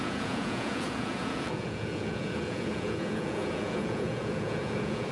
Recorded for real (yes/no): no